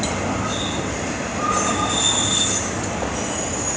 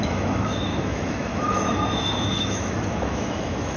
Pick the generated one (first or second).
second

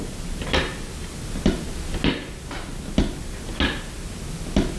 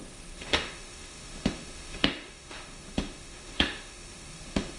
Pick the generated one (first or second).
second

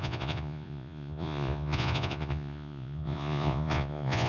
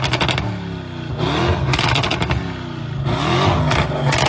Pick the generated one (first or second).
first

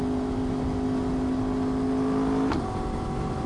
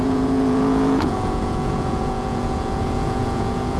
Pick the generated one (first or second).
second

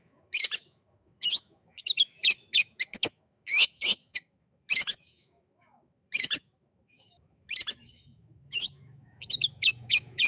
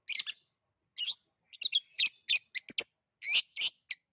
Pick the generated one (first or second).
first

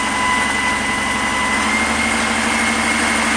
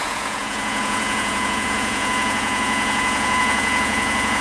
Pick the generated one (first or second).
second